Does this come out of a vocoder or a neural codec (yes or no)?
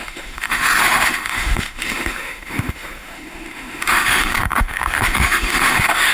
yes